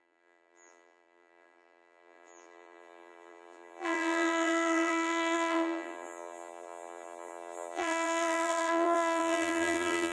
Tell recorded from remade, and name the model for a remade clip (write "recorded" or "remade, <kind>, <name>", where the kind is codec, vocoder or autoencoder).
remade, vocoder, BigVGAN v2